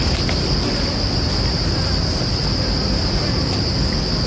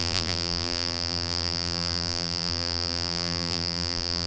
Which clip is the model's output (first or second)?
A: second